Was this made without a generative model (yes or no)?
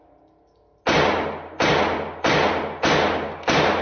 yes